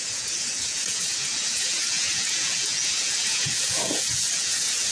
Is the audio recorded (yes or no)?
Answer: no